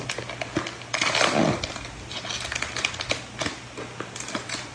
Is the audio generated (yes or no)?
no